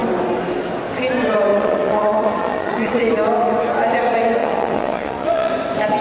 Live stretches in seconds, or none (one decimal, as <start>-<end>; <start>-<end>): 0.0-1.5; 3.1-4.4; 5.5-6.0